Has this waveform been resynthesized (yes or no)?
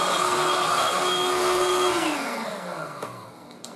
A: yes